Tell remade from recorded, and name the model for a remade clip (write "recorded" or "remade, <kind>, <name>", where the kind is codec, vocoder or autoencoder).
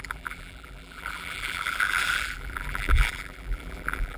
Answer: remade, vocoder, BigVGAN v2